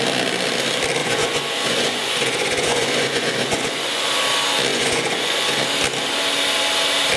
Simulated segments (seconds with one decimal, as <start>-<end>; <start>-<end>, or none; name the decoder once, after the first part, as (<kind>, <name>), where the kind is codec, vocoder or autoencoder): 1.0-4.1 (vocoder, Vocos); 4.7-5.6